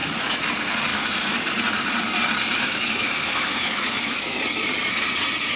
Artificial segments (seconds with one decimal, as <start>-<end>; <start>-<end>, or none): 0.0-0.5; 2.5-4.4